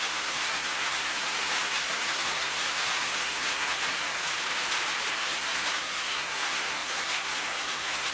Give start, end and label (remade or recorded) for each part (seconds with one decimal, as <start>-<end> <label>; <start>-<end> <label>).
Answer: 0.0-4.2 remade; 4.2-5.1 recorded; 5.1-8.1 remade